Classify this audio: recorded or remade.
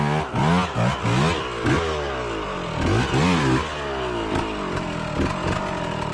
recorded